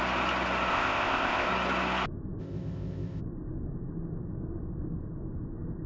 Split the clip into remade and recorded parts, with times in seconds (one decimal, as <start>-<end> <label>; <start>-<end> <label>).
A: 0.0-0.7 recorded; 0.7-1.5 remade; 1.5-2.4 recorded; 2.4-3.2 remade; 3.2-5.9 recorded